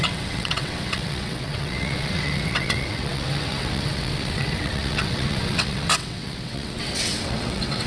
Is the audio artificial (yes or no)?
yes